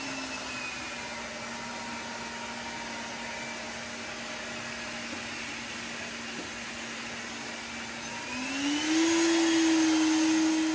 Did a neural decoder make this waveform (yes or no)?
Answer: no